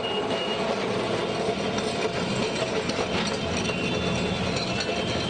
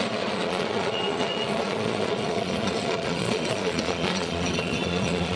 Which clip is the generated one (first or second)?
second